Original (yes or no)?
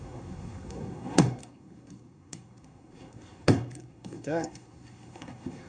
no